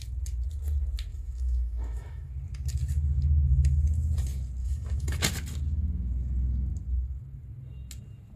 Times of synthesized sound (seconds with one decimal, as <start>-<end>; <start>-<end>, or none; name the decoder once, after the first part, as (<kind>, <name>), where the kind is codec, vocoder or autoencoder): 1.1-2.3 (autoencoder, DAC-VAE); 4.6-5.2